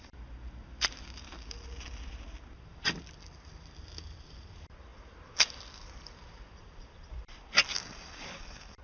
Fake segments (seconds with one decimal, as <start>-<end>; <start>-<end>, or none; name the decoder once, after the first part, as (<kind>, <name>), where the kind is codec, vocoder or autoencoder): 4.9-8.8 (vocoder, BigVGAN v2)